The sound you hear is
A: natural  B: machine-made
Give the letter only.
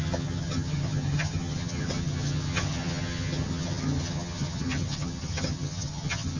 B